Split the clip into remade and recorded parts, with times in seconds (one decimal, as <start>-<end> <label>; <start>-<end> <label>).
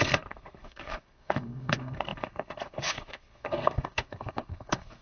0.0-5.0 remade